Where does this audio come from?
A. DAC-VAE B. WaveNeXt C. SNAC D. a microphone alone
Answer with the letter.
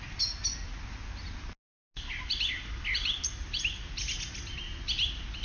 D